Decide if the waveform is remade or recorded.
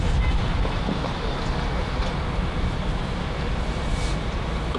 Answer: recorded